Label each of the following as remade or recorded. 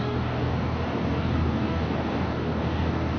remade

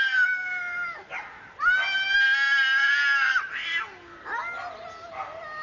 recorded